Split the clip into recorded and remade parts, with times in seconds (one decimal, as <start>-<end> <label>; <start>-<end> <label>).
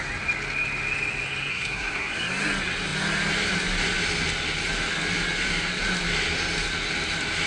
0.0-1.5 recorded; 1.5-2.1 remade; 2.1-7.5 recorded